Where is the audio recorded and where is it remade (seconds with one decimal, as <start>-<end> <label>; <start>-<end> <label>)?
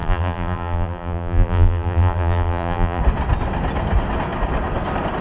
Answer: 0.0-3.0 remade; 3.0-5.2 recorded